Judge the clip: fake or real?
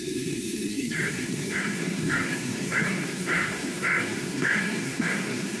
fake